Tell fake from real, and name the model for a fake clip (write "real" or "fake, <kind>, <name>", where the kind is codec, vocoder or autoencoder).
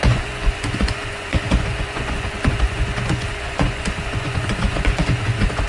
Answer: fake, vocoder, Vocos